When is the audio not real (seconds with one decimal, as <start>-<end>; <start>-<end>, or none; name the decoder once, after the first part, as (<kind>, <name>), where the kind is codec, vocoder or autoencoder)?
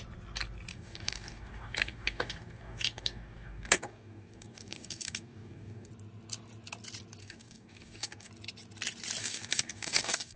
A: 0.7-5.9 (codec, DAC); 7.2-8.3; 9.2-10.4